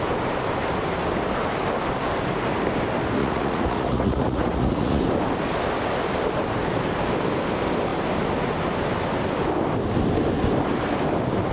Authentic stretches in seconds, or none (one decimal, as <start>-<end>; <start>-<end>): 0.0-3.2; 5.0-11.5